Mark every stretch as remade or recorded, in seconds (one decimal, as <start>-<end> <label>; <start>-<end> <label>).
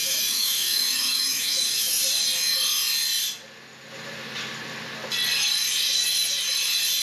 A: 0.0-2.0 remade; 2.0-7.0 recorded